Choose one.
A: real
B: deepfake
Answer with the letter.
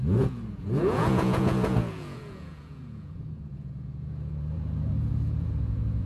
B